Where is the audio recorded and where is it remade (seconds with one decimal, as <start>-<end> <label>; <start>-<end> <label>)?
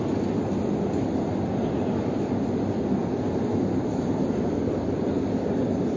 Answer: 0.0-6.0 recorded